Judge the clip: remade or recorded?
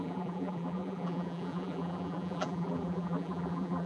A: remade